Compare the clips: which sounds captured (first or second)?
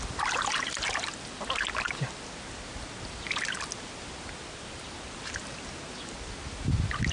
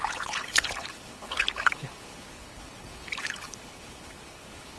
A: first